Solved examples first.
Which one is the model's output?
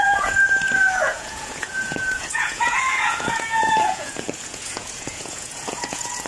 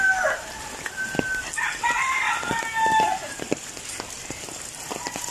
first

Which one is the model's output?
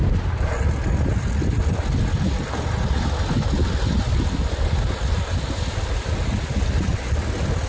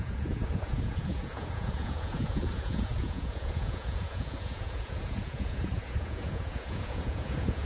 second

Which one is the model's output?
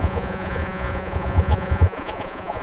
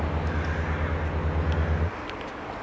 first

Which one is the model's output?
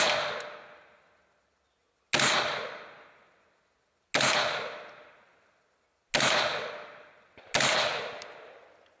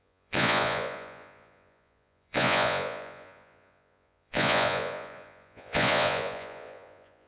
second